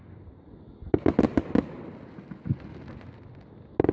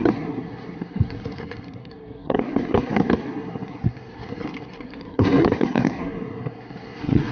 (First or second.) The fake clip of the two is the second